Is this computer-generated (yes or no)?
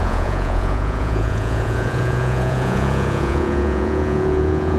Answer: yes